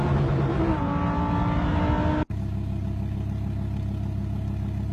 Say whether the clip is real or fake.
real